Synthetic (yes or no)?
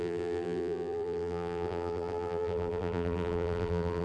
yes